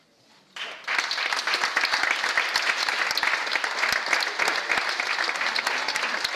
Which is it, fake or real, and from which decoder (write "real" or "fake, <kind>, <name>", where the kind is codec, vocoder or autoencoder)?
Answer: real